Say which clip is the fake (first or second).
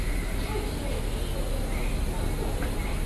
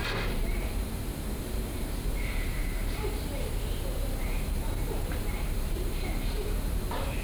second